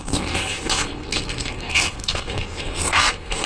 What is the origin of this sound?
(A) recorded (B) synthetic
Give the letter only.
B